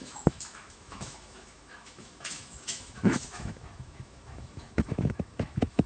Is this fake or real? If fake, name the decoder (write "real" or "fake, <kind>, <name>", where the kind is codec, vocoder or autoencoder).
fake, autoencoder, DAC-VAE